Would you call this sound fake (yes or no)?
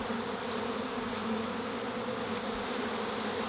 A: no